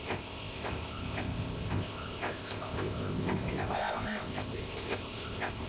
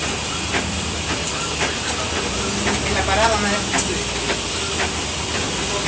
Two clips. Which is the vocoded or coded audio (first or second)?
first